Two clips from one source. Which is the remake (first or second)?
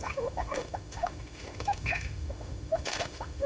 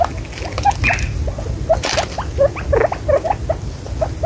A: first